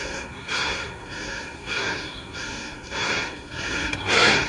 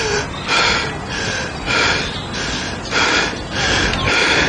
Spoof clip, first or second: first